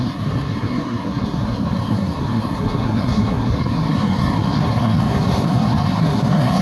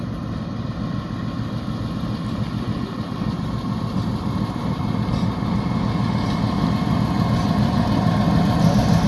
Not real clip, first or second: first